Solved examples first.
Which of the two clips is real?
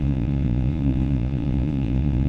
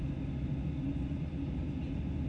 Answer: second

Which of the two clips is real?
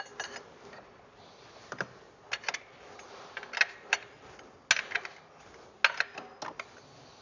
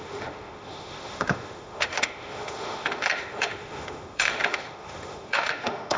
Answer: first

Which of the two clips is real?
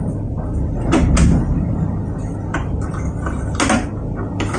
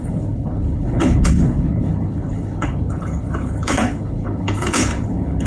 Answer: first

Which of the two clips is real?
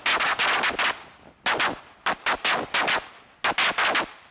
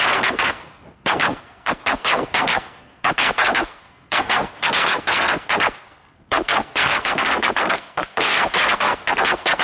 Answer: first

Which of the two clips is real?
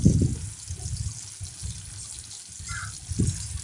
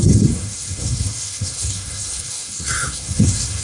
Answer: first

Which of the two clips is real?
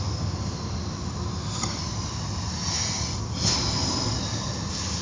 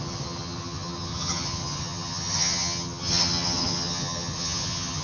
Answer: first